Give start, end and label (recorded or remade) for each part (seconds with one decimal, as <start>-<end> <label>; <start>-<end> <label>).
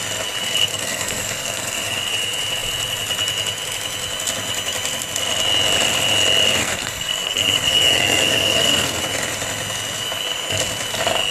0.0-0.7 recorded; 0.7-2.1 remade; 2.1-6.6 recorded; 6.6-9.0 remade; 9.0-11.3 recorded